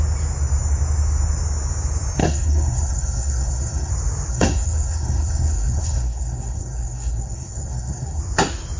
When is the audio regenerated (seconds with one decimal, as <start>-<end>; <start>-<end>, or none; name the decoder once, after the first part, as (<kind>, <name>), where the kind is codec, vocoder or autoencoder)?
2.2-3.9 (codec, SNAC); 4.3-8.2